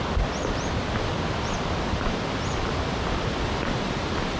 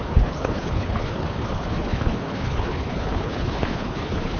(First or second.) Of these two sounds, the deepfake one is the second